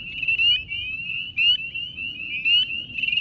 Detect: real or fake real